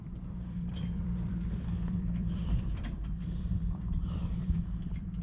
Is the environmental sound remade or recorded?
remade